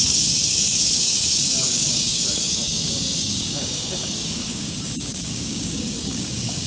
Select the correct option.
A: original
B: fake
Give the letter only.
B